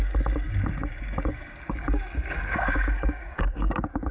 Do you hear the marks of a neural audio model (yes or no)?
yes